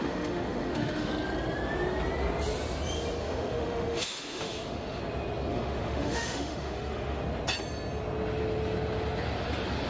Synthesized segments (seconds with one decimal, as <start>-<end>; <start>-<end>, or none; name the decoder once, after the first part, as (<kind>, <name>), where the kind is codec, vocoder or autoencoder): 0.0-1.1 (autoencoder, DAC-VAE); 3.2-5.0; 5.5-7.2